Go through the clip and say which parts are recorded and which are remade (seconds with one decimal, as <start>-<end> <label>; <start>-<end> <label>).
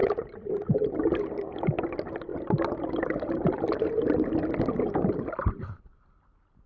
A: 0.0-6.7 recorded